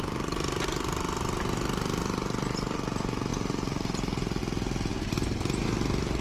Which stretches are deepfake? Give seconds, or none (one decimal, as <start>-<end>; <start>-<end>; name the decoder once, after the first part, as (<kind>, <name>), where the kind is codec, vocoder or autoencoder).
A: none

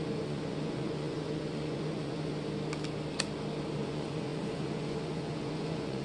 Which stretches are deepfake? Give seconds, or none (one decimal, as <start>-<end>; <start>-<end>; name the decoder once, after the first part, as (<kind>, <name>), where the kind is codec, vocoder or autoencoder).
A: 0.0-2.3 (vocoder, Vocos); 3.8-6.0

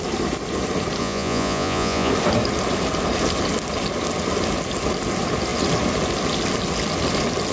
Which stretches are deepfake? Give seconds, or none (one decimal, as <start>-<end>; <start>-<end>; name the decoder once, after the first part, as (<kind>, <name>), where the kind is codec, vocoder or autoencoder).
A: 1.0-2.1 (vocoder, Vocos)

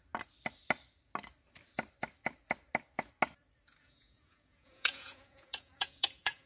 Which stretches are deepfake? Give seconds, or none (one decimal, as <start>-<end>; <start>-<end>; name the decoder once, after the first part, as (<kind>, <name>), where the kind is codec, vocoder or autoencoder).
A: 3.8-6.5 (vocoder, Vocos)

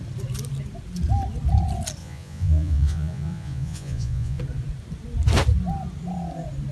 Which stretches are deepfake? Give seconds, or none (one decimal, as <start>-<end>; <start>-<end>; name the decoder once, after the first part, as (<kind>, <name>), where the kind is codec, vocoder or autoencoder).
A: 2.0-4.4 (vocoder, Vocos)